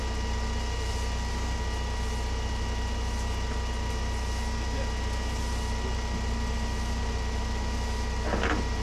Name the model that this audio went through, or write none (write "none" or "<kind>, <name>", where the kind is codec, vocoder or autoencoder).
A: none